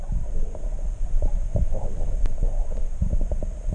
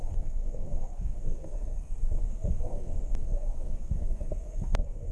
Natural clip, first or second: first